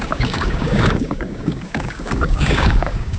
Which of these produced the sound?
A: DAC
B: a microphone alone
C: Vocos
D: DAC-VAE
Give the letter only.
A